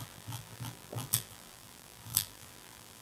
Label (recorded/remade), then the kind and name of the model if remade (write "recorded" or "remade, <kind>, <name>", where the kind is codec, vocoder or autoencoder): remade, vocoder, BigVGAN v2